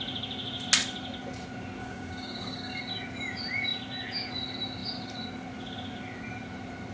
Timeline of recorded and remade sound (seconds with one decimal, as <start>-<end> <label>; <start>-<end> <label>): 0.0-1.8 recorded; 1.8-2.8 remade; 2.8-6.9 recorded